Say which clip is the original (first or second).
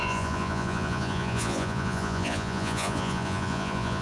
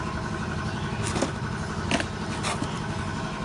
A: second